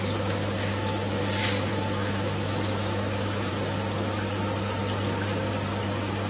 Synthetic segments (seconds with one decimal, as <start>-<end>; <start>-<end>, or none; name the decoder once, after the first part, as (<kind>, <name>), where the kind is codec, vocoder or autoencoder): 1.7-3.5 (autoencoder, DAC-VAE)